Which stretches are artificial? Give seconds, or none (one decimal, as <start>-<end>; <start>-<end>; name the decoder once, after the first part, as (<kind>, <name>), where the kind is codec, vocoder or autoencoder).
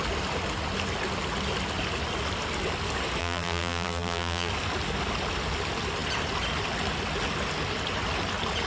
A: 3.2-4.5 (vocoder, BigVGAN v2)